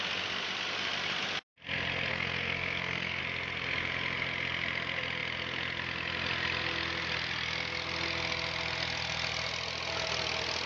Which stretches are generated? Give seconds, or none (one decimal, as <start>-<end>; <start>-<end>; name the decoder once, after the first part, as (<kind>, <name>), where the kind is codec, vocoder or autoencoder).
2.1-3.2 (codec, SNAC)